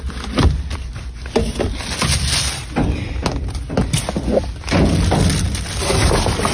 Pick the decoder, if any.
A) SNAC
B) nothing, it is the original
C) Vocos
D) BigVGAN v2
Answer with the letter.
B